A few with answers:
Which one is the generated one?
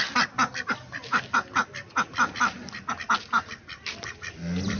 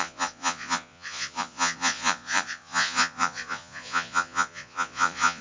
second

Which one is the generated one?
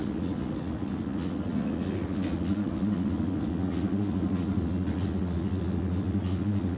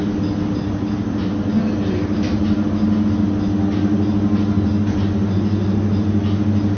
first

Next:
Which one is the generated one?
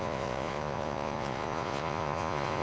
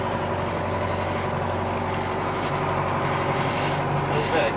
first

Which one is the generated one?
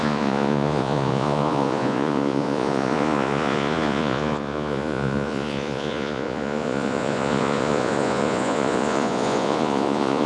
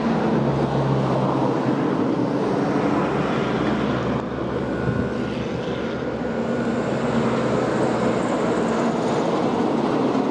first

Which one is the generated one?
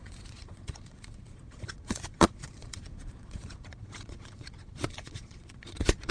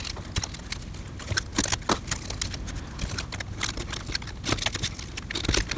first